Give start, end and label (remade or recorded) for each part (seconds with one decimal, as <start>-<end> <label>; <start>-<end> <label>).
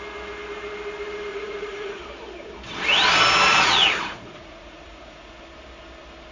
0.0-1.3 recorded; 1.3-2.0 remade; 2.0-3.5 recorded; 3.5-5.3 remade; 5.3-6.3 recorded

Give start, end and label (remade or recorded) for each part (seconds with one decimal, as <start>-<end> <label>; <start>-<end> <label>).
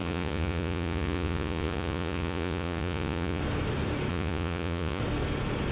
0.0-3.4 remade; 3.4-4.1 recorded; 4.1-5.0 remade; 5.0-5.7 recorded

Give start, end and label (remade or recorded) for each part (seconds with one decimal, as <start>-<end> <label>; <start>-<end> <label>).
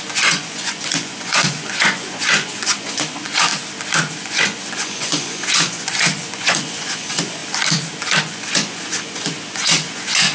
0.0-3.5 remade; 3.5-4.2 recorded; 4.2-7.4 remade; 7.4-8.2 recorded; 8.2-10.3 remade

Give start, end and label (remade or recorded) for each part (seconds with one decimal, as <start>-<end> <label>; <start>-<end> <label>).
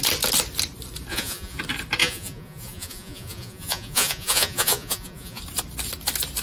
0.0-1.1 recorded; 1.1-1.6 remade; 1.6-2.0 recorded; 2.0-5.4 remade; 5.4-6.4 recorded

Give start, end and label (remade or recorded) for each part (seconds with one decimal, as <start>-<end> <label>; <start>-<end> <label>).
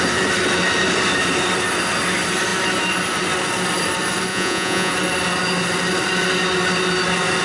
0.0-4.3 recorded; 4.3-4.9 remade; 4.9-7.4 recorded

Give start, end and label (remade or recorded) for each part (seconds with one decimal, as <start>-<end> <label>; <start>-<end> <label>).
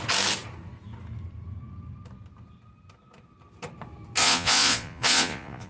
0.0-4.2 recorded; 4.2-5.7 remade